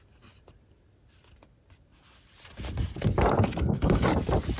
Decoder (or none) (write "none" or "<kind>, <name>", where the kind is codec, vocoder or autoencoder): none